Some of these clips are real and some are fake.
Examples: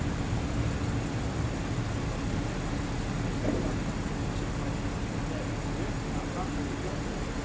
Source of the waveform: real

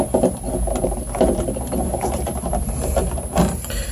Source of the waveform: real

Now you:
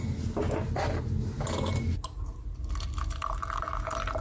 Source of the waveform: real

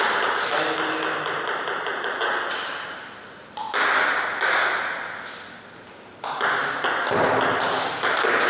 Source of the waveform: real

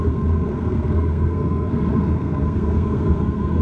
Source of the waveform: fake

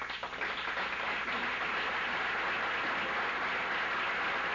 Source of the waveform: real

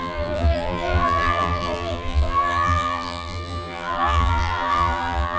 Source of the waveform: fake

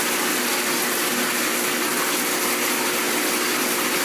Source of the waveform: real